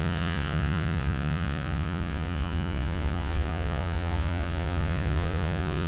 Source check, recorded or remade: remade